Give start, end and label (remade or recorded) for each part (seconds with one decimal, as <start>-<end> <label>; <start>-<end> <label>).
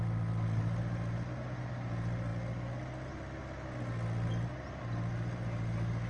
0.0-6.1 recorded